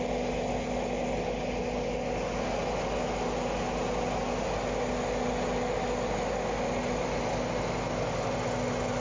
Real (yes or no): yes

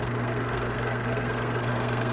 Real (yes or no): no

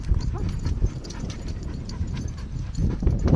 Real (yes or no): no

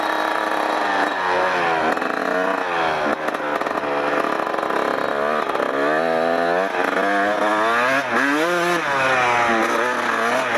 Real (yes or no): yes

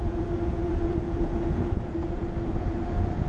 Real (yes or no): no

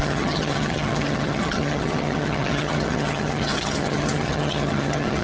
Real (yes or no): no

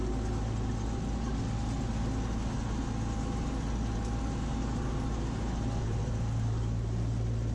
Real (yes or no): yes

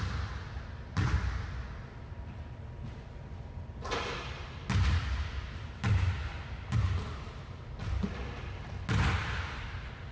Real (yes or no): yes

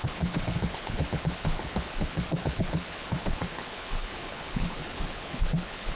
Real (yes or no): no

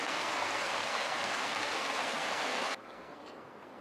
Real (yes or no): no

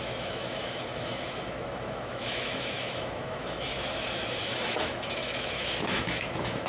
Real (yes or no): no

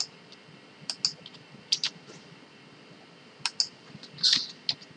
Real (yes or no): yes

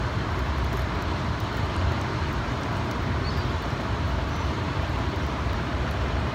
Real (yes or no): no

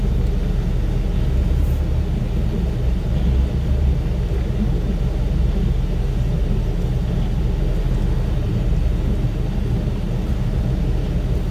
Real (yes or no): yes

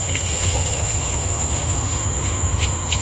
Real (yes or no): no